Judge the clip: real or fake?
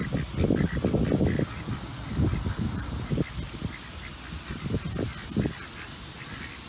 real